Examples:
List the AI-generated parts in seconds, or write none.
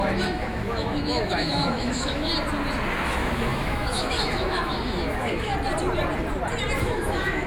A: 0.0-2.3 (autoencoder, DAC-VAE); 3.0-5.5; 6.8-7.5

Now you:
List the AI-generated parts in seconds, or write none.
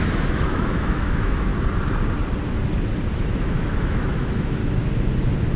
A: 0.0-1.5 (autoencoder, DAC-VAE); 3.1-4.6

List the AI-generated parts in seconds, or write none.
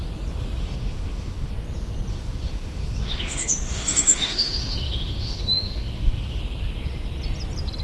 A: 0.6-1.5 (autoencoder, DAC-VAE); 2.1-6.4